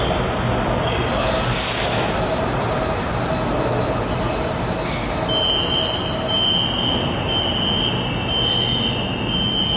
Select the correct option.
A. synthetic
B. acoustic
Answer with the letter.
B